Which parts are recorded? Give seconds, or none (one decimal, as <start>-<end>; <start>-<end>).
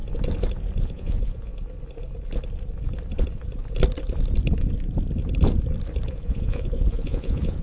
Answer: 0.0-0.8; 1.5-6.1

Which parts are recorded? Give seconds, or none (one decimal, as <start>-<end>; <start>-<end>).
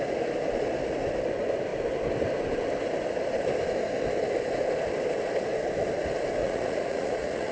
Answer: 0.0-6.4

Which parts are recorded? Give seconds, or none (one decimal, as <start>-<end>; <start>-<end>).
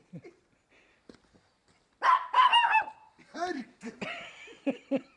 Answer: 0.0-5.2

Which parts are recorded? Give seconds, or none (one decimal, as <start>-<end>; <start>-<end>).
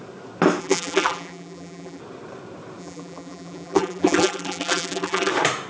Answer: 0.0-0.6; 2.0-2.8; 5.3-5.7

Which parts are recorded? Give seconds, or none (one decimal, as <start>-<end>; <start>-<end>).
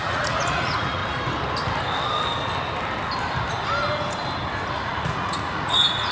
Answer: 1.0-4.7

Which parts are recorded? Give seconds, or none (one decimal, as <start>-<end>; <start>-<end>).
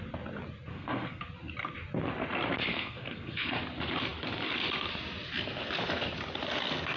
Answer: 0.0-0.7; 1.2-2.7; 3.6-7.0